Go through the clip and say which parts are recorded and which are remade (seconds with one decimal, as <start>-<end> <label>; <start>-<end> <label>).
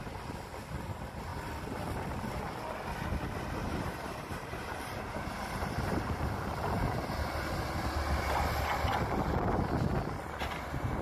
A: 0.0-3.6 recorded; 3.6-6.2 remade; 6.2-11.0 recorded